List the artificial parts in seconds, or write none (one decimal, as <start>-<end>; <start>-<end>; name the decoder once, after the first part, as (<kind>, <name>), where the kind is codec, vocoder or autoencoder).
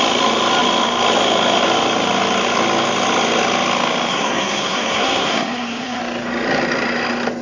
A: 4.1-6.0 (codec, SNAC)